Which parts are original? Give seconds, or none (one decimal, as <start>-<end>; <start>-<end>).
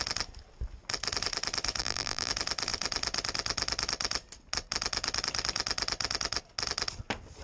0.0-1.8; 2.3-7.4